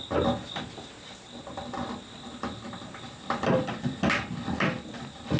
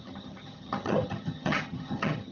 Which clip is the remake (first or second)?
second